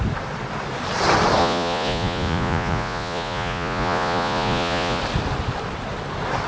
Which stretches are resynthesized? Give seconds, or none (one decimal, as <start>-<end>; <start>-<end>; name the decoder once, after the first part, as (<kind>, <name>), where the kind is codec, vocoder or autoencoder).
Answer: 1.4-5.0 (vocoder, Vocos)